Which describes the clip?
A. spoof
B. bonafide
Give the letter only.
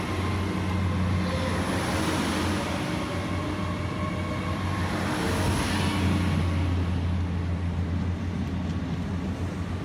B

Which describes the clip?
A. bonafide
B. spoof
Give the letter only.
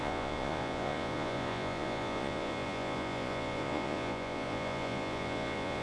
B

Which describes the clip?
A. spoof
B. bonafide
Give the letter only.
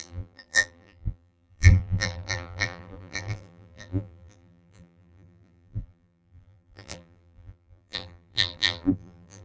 A